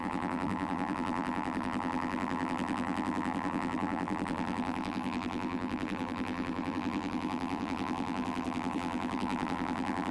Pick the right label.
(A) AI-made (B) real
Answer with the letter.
A